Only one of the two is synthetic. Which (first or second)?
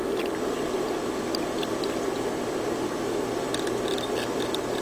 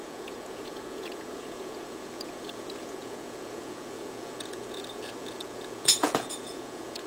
second